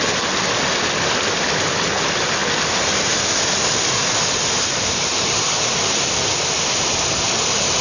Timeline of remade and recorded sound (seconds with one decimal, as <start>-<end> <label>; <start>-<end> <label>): 0.0-7.8 recorded

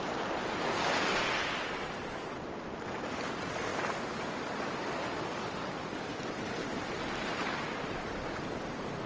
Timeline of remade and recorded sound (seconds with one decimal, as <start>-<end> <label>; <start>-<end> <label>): 0.0-3.7 remade; 3.7-4.2 recorded; 4.2-9.1 remade

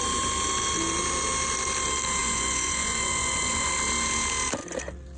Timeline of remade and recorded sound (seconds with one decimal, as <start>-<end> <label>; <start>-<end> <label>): 0.0-2.2 recorded; 2.2-3.7 remade; 3.7-5.2 recorded

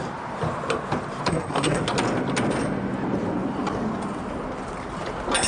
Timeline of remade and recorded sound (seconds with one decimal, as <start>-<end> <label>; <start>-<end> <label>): 0.0-1.3 recorded; 1.3-1.8 remade; 1.8-5.5 recorded

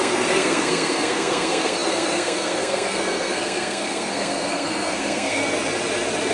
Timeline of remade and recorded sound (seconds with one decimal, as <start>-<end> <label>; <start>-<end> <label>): 0.0-5.4 remade; 5.4-6.3 recorded

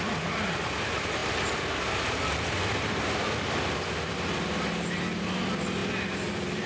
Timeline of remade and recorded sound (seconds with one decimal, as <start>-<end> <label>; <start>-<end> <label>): 0.0-6.7 recorded

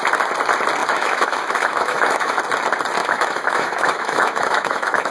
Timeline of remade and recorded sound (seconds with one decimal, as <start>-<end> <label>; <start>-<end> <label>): 0.0-0.8 recorded; 0.8-2.4 remade; 2.4-3.0 recorded; 3.0-5.1 remade